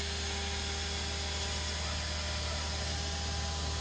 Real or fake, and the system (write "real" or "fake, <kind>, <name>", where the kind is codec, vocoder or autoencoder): real